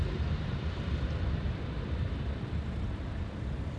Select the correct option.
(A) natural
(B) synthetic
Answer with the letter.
B